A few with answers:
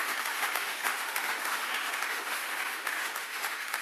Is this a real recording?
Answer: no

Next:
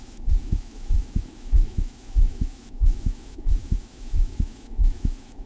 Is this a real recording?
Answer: no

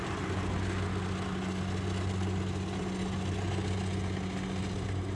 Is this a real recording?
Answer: yes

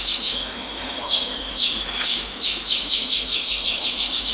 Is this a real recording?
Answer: no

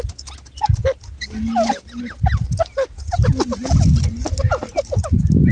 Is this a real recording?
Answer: yes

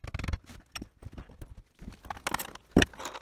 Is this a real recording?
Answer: yes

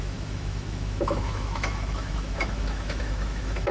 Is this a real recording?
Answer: no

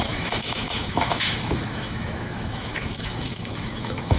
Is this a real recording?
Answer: no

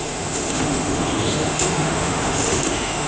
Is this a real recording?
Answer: no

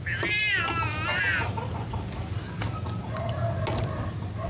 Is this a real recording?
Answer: yes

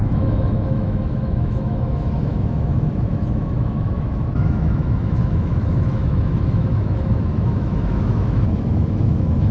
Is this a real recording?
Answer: no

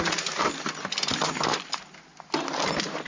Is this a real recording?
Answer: yes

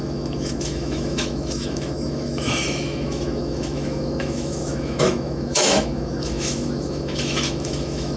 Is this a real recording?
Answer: no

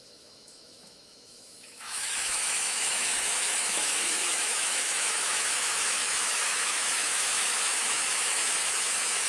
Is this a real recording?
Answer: no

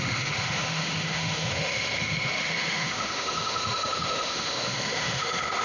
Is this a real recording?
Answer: no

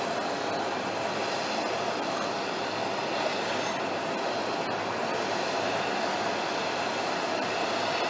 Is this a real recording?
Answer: yes